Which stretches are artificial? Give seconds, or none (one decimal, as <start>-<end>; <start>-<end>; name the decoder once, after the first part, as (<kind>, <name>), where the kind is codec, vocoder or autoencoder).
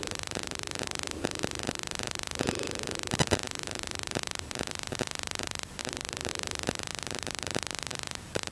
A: none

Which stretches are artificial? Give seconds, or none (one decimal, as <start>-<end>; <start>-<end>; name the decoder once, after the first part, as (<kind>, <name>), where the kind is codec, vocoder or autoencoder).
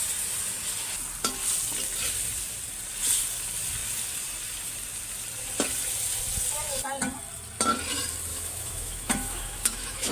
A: 8.3-10.1 (autoencoder, DAC-VAE)